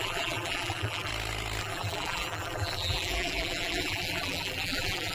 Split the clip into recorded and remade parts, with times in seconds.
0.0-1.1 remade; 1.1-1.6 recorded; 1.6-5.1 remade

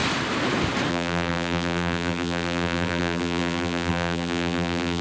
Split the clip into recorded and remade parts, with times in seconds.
0.0-0.9 recorded; 0.9-5.0 remade

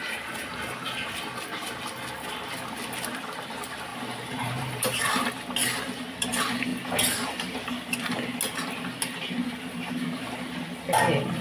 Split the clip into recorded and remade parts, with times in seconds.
0.0-3.9 recorded; 3.9-5.3 remade; 5.3-11.4 recorded